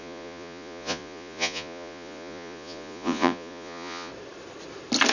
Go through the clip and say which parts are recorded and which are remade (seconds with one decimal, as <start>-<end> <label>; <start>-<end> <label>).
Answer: 0.0-4.1 remade; 4.1-5.1 recorded